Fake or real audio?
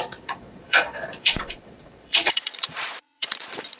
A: fake